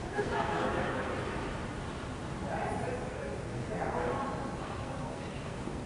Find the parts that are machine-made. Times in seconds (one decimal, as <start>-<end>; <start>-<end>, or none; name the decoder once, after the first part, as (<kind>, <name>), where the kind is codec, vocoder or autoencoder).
0.0-1.1 (codec, SNAC); 3.1-4.1; 4.6-5.9